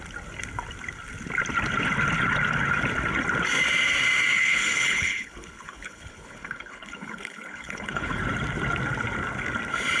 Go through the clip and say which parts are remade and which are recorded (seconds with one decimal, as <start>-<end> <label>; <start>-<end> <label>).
0.0-4.4 recorded; 4.4-8.2 remade; 8.2-10.0 recorded